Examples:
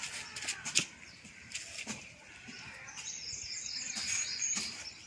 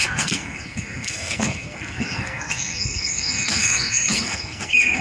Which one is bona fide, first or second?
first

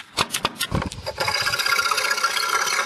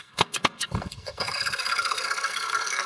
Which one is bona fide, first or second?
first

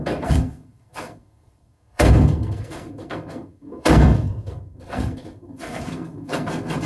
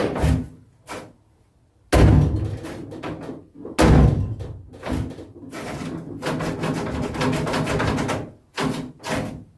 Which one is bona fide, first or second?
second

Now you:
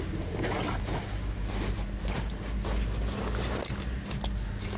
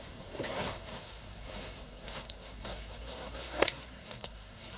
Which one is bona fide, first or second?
first